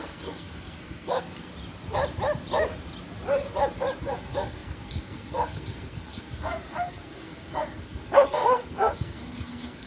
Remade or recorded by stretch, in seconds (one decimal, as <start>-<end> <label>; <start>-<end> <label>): 0.0-1.5 remade; 1.5-4.0 recorded; 4.0-9.9 remade